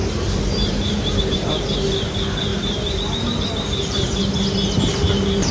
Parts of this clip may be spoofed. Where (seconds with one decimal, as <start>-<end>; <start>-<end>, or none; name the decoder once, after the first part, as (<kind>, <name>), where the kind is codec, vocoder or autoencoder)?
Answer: 0.0-1.5 (vocoder, BigVGAN v2); 2.5-4.2